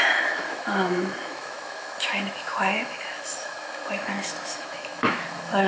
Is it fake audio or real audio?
fake